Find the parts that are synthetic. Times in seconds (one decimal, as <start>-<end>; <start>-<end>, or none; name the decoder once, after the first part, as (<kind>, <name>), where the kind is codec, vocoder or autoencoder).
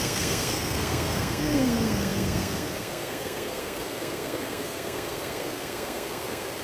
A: 0.0-6.6 (codec, SNAC)